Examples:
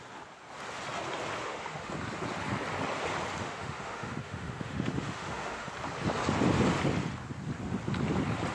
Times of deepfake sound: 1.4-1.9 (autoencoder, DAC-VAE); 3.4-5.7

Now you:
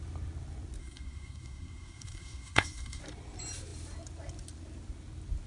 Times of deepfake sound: 0.8-3.0 (codec, SNAC)

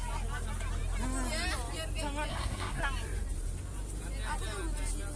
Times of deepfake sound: 2.3-2.8 (codec, SNAC)

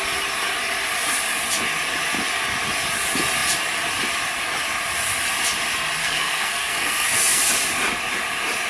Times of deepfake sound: 6.0-7.4 (codec, SNAC)